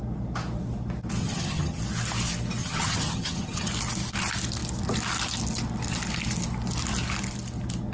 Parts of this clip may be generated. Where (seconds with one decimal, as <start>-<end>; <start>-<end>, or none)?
1.2-1.8; 2.6-3.7